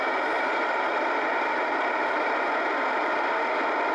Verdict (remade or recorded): remade